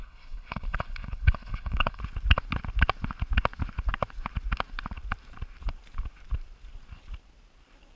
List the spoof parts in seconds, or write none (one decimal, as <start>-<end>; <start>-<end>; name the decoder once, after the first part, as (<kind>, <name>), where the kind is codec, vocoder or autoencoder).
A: 0.0-2.0 (codec, HILCodec)